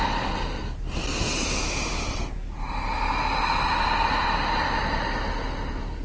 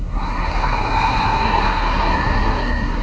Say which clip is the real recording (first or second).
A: first